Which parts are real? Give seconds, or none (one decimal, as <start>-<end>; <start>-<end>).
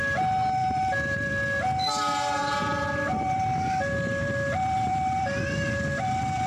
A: 0.0-0.6; 1.3-2.4